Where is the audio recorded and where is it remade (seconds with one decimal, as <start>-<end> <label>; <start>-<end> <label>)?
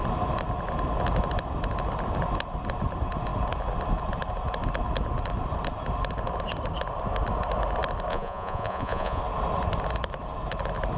0.0-8.1 recorded; 8.1-9.2 remade; 9.2-11.0 recorded